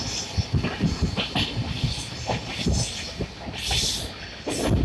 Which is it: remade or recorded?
recorded